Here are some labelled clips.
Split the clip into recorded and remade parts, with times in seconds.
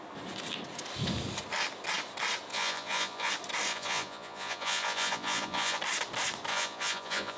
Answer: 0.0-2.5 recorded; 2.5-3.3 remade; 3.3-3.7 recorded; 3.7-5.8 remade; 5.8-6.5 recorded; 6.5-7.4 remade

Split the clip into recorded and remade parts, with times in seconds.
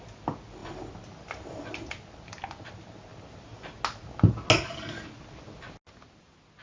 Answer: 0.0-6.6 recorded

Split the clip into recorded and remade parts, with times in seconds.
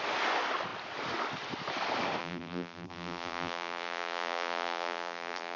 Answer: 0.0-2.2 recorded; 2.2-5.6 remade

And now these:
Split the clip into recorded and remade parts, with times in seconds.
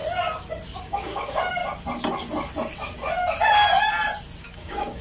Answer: 0.0-0.8 recorded; 0.8-1.6 remade; 1.6-4.4 recorded; 4.4-5.0 remade